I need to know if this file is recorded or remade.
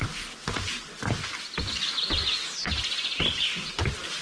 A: recorded